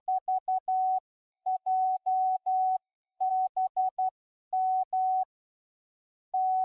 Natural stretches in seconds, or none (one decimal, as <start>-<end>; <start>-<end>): 0.0-1.3; 3.3-6.6